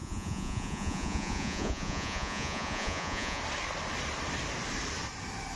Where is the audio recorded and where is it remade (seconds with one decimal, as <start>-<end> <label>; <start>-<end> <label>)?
0.0-3.4 remade; 3.4-5.6 recorded